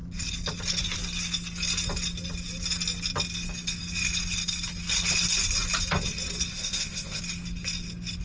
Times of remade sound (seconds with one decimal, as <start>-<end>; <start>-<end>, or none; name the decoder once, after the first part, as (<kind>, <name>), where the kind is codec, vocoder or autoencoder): 6.5-7.2 (codec, ZipCodec)

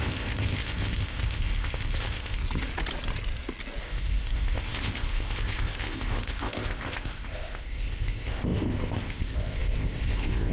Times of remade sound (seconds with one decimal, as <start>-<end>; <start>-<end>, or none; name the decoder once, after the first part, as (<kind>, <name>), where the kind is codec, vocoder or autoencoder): 0.0-2.4 (codec, ZipCodec); 3.8-10.5

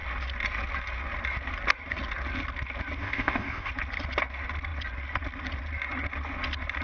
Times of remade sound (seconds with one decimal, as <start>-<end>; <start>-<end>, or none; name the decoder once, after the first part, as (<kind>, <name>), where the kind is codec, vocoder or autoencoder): 3.0-3.7 (codec, ZipCodec)

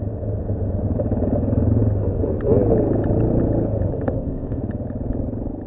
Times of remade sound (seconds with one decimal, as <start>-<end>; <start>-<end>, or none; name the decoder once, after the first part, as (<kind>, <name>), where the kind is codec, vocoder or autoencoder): 3.9-4.6 (codec, ZipCodec)

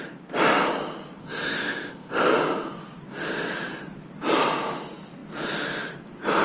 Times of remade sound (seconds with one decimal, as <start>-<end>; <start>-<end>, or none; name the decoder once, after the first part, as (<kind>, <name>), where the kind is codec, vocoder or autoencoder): 1.2-2.3 (codec, ZipCodec)